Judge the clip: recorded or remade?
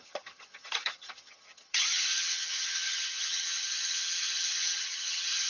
remade